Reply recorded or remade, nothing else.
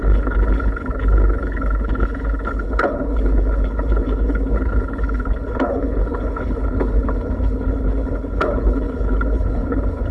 remade